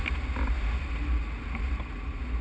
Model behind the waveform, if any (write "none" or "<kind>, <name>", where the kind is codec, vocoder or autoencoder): none